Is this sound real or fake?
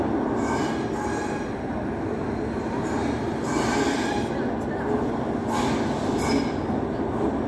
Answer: real